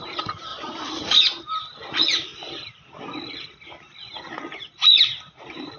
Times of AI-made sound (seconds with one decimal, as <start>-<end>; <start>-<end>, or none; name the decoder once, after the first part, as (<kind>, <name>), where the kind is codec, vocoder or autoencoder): 0.0-2.3 (vocoder, BigVGAN v2); 5.2-5.8